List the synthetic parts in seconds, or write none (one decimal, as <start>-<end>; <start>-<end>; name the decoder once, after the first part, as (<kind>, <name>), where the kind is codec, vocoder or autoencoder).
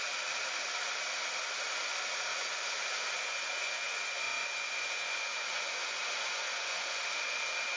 2.3-7.0 (vocoder, Vocos)